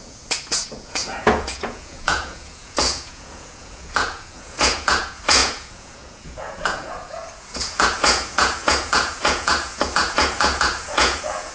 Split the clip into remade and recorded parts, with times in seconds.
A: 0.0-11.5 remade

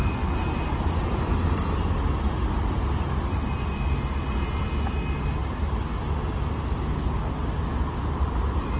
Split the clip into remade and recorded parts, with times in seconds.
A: 0.0-8.8 recorded

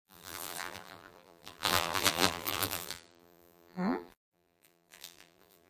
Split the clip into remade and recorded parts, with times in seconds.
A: 0.0-5.7 remade

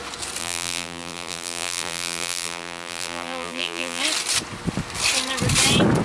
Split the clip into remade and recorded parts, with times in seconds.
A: 0.0-0.4 recorded; 0.4-4.0 remade; 4.0-6.0 recorded

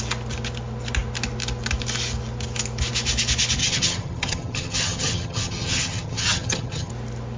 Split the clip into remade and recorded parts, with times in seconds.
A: 0.0-3.6 recorded; 3.6-6.9 remade; 6.9-7.4 recorded